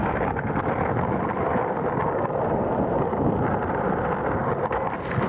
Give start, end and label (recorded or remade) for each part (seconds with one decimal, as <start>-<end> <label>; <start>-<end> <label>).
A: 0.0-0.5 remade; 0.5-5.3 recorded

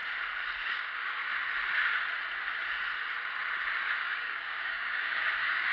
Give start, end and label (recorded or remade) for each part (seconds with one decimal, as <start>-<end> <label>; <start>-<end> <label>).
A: 0.0-0.7 recorded; 0.7-1.2 remade; 1.2-4.0 recorded; 4.0-5.7 remade

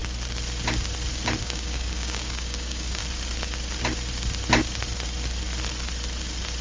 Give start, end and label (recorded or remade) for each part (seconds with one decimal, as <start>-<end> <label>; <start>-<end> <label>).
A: 0.0-1.4 recorded; 1.4-3.0 remade; 3.0-6.6 recorded

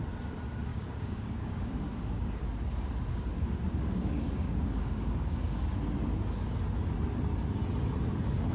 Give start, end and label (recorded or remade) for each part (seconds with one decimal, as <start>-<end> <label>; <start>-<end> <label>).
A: 0.0-0.7 recorded; 0.7-2.4 remade; 2.4-3.1 recorded; 3.1-5.8 remade; 5.8-8.5 recorded

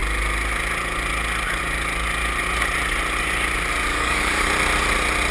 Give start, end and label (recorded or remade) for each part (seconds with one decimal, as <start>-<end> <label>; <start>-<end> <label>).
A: 0.0-3.9 recorded; 3.9-4.5 remade; 4.5-5.3 recorded

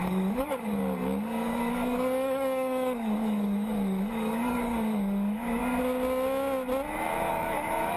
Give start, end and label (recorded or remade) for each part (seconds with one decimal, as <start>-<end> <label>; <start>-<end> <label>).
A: 0.0-5.6 remade; 5.6-7.3 recorded; 7.3-8.0 remade

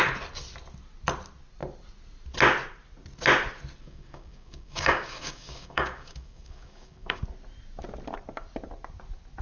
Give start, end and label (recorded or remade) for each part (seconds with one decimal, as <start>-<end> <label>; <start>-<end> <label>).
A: 0.0-3.8 recorded; 3.8-7.2 remade; 7.2-9.4 recorded

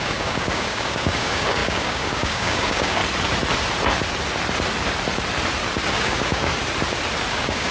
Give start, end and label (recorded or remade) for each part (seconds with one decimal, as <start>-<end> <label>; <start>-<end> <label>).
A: 0.0-3.0 remade; 3.0-5.9 recorded; 5.9-6.5 remade; 6.5-7.3 recorded; 7.3-7.7 remade